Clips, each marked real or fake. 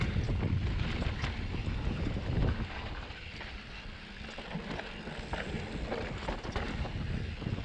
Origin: real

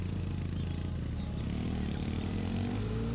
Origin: real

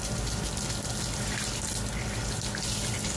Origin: real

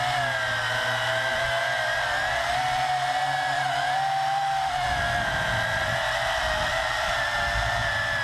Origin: real